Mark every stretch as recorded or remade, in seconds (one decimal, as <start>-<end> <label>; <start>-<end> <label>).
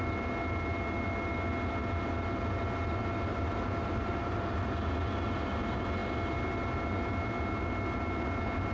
0.0-3.3 recorded; 3.3-4.4 remade; 4.4-8.7 recorded